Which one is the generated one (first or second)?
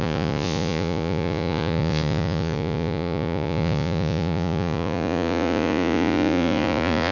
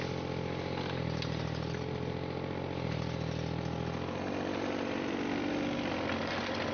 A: first